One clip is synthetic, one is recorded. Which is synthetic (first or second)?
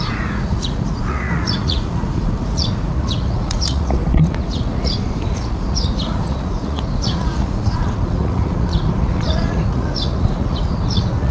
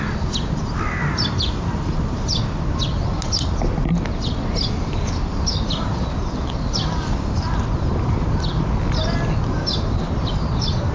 first